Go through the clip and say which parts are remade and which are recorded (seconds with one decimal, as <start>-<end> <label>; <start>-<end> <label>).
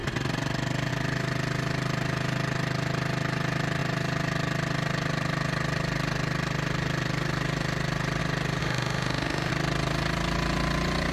0.0-8.6 recorded; 8.6-9.5 remade; 9.5-11.1 recorded